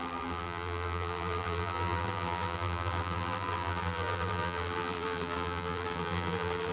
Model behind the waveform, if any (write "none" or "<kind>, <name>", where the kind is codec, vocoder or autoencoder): vocoder, BigVGAN v2